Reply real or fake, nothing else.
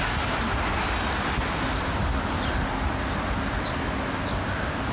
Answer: real